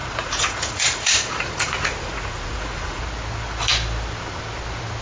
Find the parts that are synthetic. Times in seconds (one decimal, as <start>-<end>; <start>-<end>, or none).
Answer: 0.0-3.0